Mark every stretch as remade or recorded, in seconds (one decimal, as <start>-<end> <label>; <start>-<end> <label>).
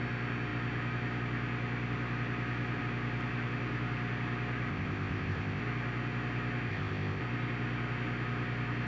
0.0-4.7 recorded; 4.7-5.6 remade; 5.6-6.7 recorded; 6.7-7.2 remade; 7.2-8.9 recorded